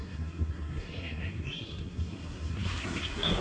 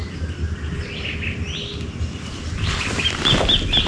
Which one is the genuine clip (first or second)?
second